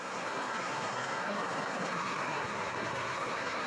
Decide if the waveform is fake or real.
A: fake